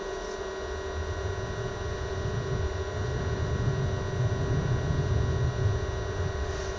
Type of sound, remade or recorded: recorded